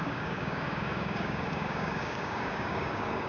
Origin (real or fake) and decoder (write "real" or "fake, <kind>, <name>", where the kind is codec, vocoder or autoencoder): fake, codec, DAC